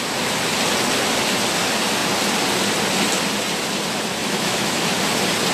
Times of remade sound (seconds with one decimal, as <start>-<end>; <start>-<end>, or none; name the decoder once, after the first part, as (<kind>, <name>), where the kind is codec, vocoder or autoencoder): 4.2-5.0 (autoencoder, DAC-VAE)